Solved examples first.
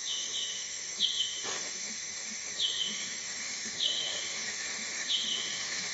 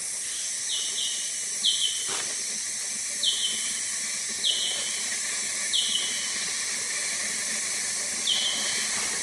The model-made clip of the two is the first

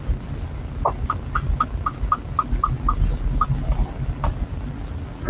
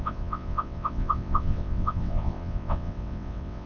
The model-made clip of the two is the second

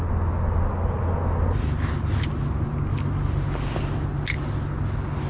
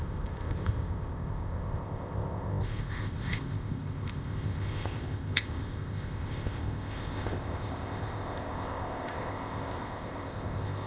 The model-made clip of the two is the second